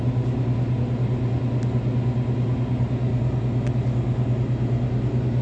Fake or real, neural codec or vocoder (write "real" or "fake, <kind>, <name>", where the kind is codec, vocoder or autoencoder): real